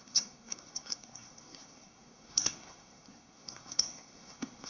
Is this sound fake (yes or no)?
yes